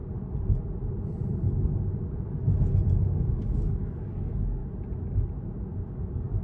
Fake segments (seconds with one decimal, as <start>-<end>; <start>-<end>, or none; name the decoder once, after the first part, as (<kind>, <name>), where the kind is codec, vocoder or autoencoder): 3.0-4.6 (codec, DAC); 5.9-6.4